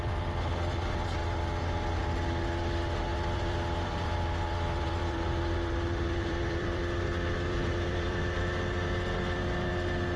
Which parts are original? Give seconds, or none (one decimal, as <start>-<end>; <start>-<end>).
0.0-3.1; 8.4-10.2